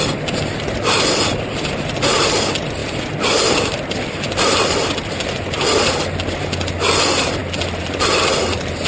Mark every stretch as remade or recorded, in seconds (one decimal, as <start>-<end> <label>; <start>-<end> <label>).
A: 0.0-8.9 recorded